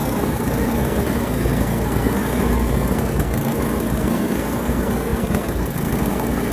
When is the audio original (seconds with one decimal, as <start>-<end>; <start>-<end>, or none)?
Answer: none